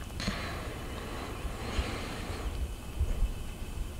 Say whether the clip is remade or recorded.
recorded